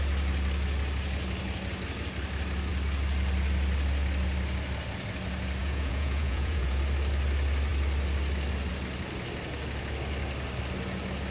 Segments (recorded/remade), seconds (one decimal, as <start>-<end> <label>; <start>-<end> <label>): 0.0-5.6 recorded; 5.6-6.8 remade; 6.8-11.3 recorded